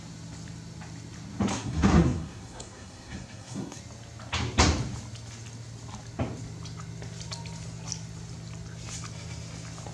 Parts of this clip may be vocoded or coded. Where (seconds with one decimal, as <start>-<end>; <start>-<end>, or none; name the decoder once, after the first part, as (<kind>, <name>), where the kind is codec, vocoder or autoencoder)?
1.5-3.8 (codec, SNAC)